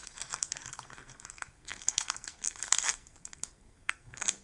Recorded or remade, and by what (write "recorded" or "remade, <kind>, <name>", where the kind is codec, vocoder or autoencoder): remade, codec, SNAC